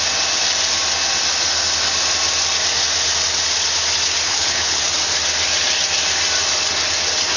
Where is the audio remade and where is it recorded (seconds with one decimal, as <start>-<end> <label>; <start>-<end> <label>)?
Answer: 0.0-4.3 recorded; 4.3-4.8 remade; 4.8-7.4 recorded